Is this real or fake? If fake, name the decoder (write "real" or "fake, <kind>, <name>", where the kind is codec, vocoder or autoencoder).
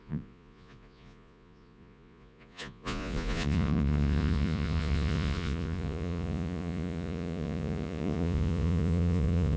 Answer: fake, vocoder, Vocos